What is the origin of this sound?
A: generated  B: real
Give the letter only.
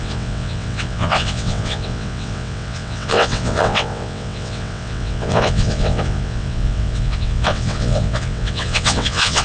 A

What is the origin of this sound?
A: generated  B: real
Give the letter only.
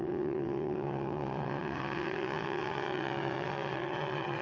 A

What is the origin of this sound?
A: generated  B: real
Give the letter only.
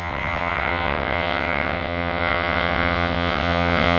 A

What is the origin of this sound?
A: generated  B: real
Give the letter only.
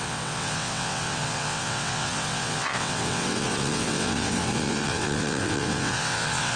A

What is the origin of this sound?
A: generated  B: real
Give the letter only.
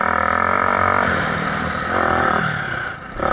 B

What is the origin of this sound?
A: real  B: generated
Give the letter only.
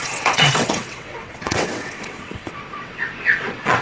B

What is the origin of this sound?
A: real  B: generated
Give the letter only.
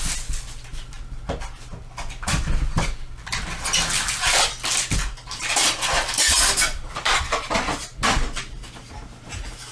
A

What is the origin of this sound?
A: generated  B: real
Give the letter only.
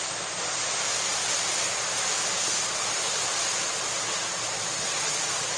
B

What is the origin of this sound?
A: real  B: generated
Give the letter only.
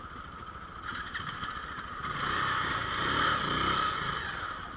A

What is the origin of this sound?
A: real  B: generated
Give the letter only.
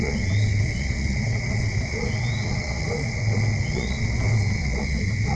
B